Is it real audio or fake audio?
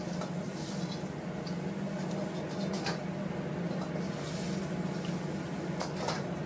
real